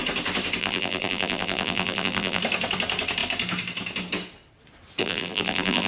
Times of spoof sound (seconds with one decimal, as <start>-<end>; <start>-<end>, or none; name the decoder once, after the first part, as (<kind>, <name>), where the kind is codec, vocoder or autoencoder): 0.6-2.4 (vocoder, BigVGAN v2); 5.0-5.9